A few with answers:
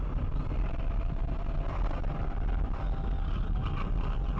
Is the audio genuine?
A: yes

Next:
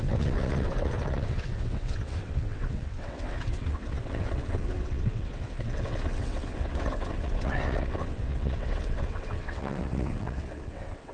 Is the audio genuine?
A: no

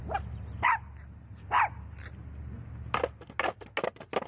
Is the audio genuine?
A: yes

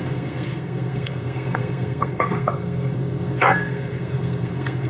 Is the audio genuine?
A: no